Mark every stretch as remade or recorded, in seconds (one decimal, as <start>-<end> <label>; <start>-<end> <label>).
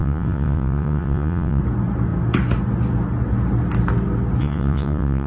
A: 0.0-1.6 remade; 1.6-4.4 recorded; 4.4-5.3 remade